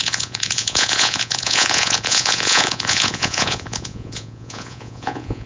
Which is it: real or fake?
fake